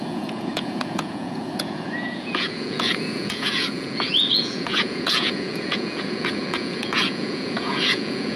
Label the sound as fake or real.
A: fake